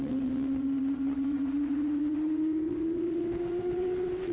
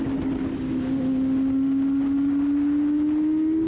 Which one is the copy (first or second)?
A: first